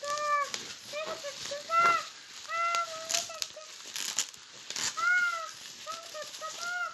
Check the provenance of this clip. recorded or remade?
recorded